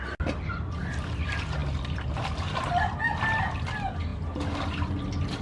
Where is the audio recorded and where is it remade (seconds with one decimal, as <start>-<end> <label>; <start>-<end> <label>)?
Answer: 0.0-4.1 recorded; 4.1-5.4 remade